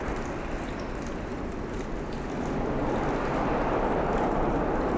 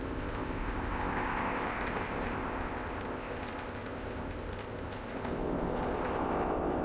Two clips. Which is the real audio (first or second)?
first